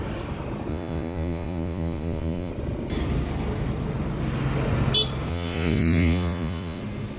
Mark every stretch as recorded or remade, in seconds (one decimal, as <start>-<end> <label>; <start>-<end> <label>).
0.0-0.7 recorded; 0.7-2.5 remade; 2.5-5.3 recorded; 5.3-6.8 remade; 6.8-7.2 recorded